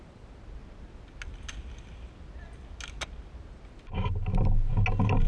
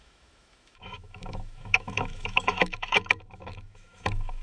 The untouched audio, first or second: first